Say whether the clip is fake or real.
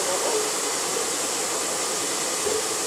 real